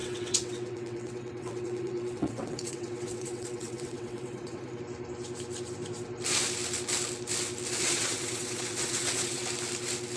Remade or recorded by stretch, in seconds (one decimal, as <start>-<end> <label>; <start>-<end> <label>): 0.0-4.8 remade; 4.8-7.8 recorded; 7.8-9.4 remade; 9.4-10.2 recorded